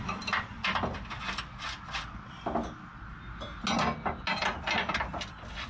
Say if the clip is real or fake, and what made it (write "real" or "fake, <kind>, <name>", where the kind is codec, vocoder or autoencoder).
real